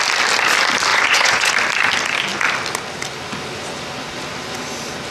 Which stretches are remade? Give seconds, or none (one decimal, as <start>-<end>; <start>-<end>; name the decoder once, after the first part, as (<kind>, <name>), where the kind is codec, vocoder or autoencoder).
0.9-1.5 (vocoder, Vocos)